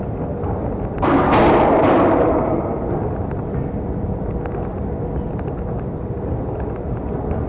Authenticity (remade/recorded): recorded